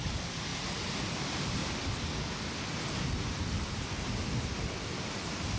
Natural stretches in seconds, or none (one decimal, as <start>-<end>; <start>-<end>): 0.5-1.2; 1.6-2.6